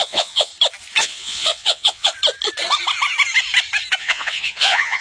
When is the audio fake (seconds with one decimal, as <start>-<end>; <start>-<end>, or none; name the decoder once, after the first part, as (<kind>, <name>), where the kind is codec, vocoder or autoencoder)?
0.0-0.5 (vocoder, WaveNeXt); 1.0-2.1; 4.0-5.0